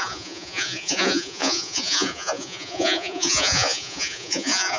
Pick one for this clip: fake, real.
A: fake